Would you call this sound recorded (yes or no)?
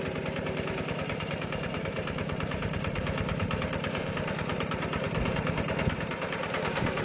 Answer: no